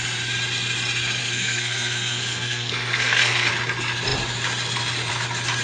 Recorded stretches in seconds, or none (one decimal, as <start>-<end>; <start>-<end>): 0.0-1.2; 3.5-5.6